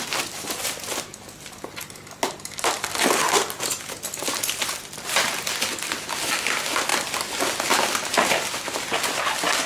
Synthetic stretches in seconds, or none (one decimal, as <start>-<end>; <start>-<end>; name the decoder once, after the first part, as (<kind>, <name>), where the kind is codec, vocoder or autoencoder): none